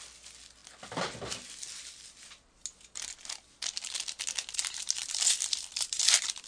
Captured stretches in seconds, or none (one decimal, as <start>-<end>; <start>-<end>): 0.0-6.5